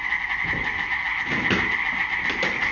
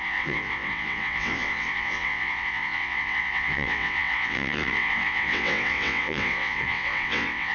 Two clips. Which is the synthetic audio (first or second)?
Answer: second